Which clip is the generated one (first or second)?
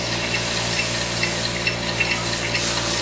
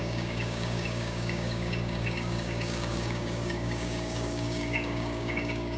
second